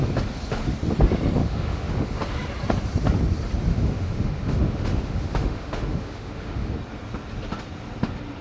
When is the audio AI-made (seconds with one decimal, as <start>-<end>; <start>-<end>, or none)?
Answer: 1.4-2.2; 3.7-6.7